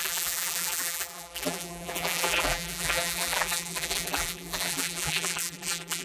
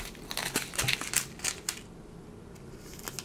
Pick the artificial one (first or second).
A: first